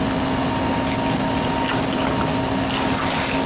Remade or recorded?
recorded